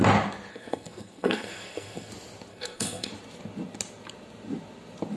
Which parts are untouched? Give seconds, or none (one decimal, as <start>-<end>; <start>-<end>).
0.0-0.5; 2.1-2.5; 3.1-5.2